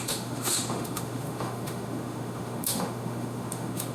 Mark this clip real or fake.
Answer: fake